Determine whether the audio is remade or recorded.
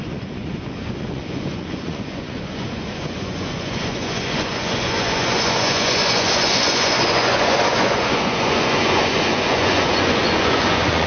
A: remade